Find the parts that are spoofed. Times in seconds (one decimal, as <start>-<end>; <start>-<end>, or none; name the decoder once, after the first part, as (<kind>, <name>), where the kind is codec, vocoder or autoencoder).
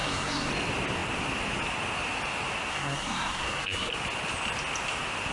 0.0-0.5 (codec, SNAC); 2.7-3.9